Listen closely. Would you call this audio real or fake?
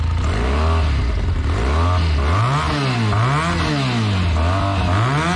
real